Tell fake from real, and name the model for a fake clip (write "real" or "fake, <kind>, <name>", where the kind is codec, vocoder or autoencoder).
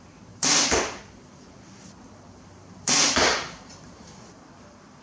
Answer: fake, vocoder, BigVGAN v2